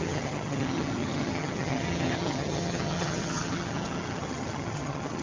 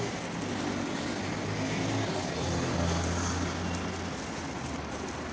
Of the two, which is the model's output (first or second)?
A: first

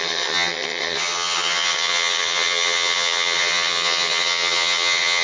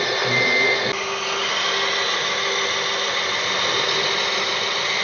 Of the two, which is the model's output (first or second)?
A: first